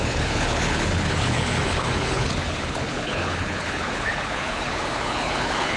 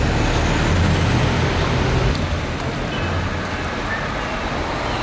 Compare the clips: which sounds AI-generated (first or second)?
first